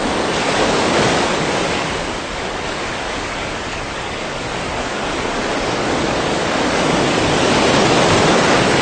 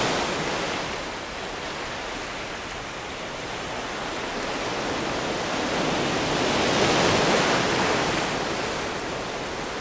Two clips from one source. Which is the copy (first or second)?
first